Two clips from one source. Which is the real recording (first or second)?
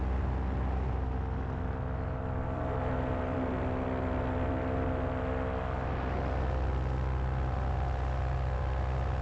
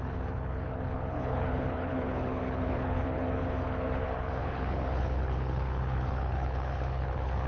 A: first